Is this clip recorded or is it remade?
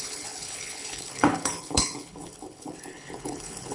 remade